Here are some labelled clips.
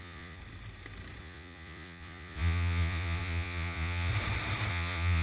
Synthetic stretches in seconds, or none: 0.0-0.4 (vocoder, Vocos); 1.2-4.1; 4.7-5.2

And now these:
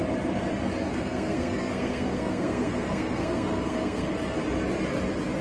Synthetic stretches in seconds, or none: 0.9-4.1 (codec, SNAC)

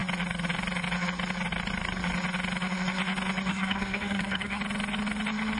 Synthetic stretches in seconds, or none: 3.5-4.6 (codec, SNAC)

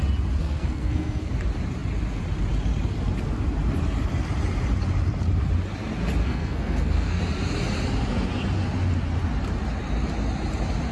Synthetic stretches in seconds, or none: 0.4-1.3 (codec, SNAC); 6.2-7.2

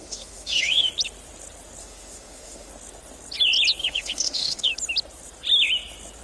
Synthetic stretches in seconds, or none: 0.0-0.9 (autoencoder, DAC-VAE); 1.8-2.7; 3.8-4.7

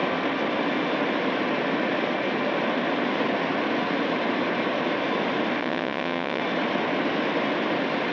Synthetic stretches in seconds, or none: 5.6-6.4 (vocoder, WaveNeXt)

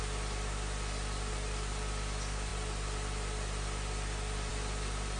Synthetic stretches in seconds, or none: none

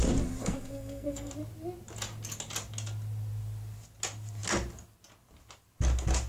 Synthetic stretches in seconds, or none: 0.4-1.3 (codec, SNAC)